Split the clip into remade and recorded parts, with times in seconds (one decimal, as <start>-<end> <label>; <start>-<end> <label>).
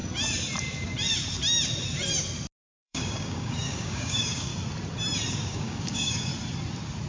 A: 0.0-2.6 recorded; 2.6-4.5 remade; 4.5-5.3 recorded; 5.3-6.3 remade; 6.3-7.1 recorded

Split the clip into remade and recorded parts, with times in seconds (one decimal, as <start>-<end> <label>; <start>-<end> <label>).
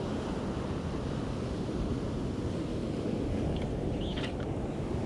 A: 0.0-2.7 recorded; 2.7-3.6 remade; 3.6-4.1 recorded; 4.1-5.1 remade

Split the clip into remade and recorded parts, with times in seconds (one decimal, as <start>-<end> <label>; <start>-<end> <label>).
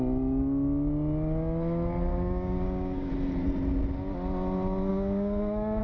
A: 0.0-2.1 recorded; 2.1-3.1 remade; 3.1-4.9 recorded; 4.9-5.8 remade